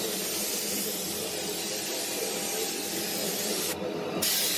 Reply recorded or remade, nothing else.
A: recorded